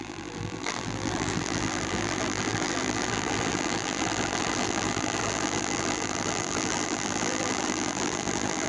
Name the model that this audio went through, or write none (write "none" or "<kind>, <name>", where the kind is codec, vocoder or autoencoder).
vocoder, BigVGAN v2